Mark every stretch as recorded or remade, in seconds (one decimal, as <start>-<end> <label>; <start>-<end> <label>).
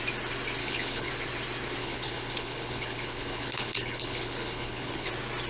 0.0-0.6 recorded; 0.6-1.1 remade; 1.1-1.8 recorded; 1.8-5.1 remade; 5.1-5.5 recorded